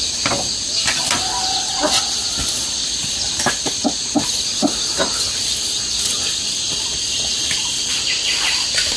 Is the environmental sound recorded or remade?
recorded